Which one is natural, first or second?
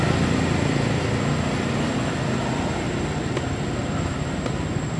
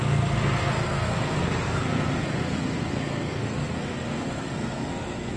first